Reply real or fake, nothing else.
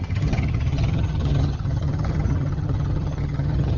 fake